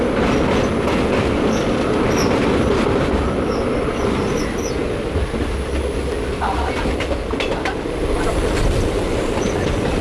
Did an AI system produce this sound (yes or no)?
no